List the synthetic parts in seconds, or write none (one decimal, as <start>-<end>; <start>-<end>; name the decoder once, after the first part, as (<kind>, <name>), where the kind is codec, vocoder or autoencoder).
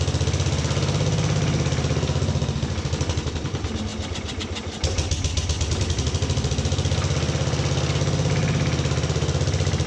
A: none